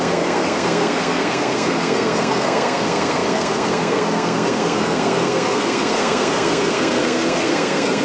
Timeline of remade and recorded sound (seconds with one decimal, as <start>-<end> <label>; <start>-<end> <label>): 0.0-8.0 remade